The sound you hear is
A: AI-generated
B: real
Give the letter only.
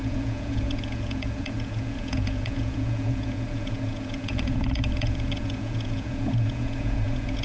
A